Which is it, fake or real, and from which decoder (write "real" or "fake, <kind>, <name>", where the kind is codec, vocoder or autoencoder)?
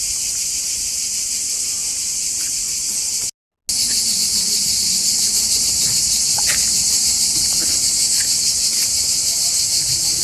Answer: real